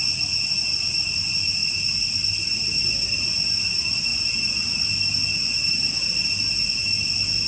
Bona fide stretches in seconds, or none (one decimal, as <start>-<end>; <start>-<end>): 0.0-7.5